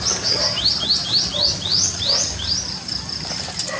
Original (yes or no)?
yes